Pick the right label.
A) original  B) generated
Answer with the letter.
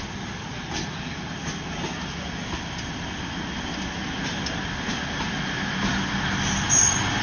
A